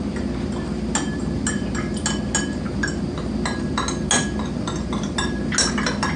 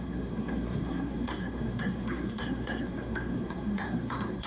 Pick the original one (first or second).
first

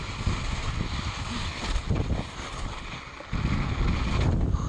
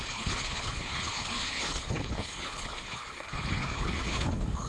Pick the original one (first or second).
first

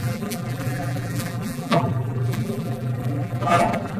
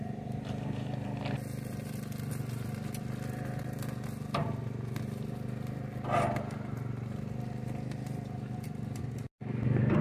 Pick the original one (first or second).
second